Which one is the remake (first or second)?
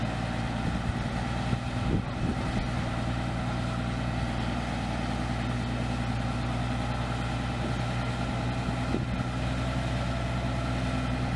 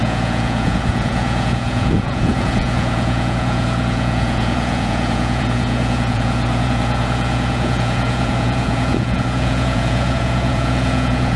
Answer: second